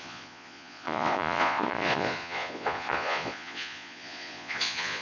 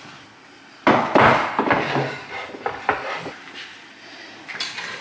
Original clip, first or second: second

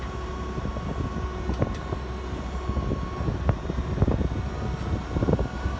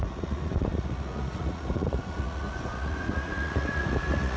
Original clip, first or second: first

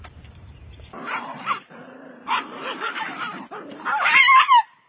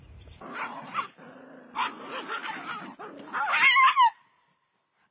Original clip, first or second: second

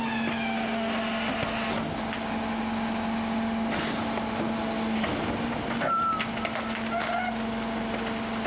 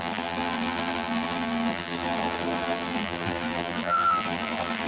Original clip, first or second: first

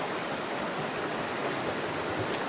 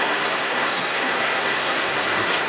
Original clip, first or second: first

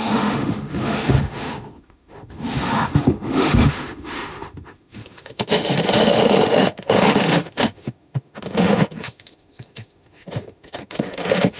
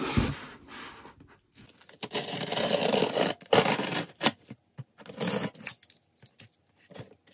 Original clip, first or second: second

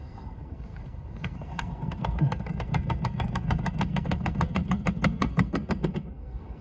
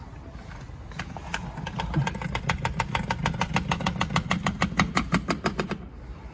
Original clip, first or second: second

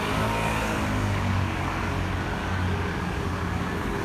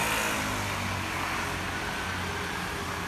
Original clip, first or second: second